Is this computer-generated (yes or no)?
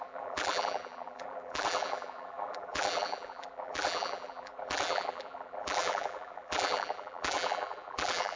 yes